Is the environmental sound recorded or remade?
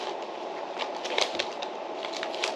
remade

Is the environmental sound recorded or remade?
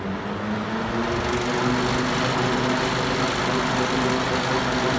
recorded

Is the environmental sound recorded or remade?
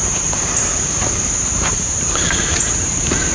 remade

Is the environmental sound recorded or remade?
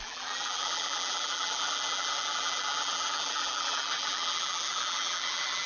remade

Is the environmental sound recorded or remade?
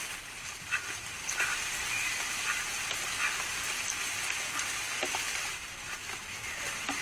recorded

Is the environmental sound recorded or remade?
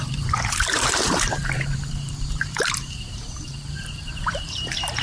remade